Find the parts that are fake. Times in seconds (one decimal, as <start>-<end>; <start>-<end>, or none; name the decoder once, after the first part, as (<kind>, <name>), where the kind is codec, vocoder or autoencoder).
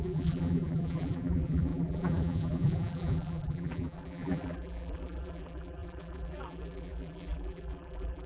0.0-8.3 (vocoder, BigVGAN v2)